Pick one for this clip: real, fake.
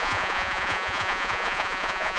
fake